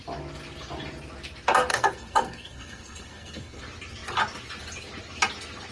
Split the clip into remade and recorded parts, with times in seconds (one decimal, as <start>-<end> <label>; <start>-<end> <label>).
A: 0.0-1.7 recorded; 1.7-3.6 remade; 3.6-5.7 recorded